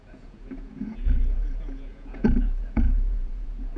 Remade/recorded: remade